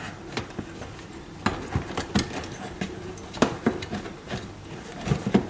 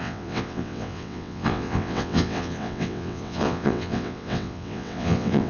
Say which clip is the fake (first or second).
second